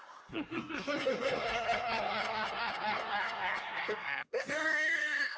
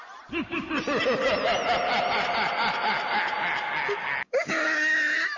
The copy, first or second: first